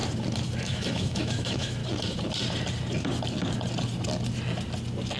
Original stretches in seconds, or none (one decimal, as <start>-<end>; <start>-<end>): 0.0-0.6; 1.8-5.2